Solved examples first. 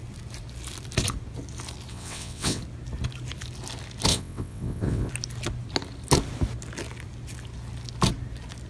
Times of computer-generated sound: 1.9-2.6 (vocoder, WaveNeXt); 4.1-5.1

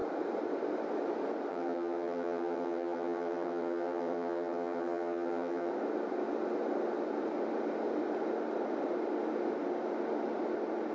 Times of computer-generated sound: 1.5-5.7 (vocoder, HiFi-GAN)

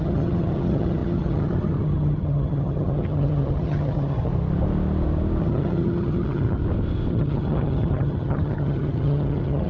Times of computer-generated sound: 0.0-4.3 (vocoder, HiFi-GAN); 5.4-6.6; 7.1-9.7